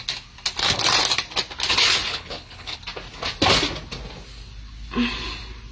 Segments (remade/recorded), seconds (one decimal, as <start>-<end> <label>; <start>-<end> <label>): 0.0-2.1 recorded; 2.1-2.8 remade; 2.8-5.7 recorded

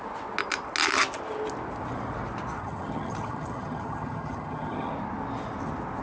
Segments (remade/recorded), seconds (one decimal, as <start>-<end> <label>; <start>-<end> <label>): 0.0-2.6 recorded; 2.6-4.9 remade; 4.9-6.0 recorded

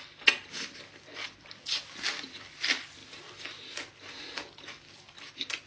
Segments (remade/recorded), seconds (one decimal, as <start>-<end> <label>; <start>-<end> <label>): 0.0-3.0 remade; 3.0-5.3 recorded; 5.3-5.7 remade

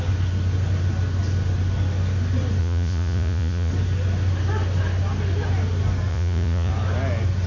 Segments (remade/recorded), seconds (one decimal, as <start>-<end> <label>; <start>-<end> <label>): 0.0-2.6 recorded; 2.6-3.7 remade; 3.7-6.1 recorded; 6.1-6.7 remade; 6.7-7.5 recorded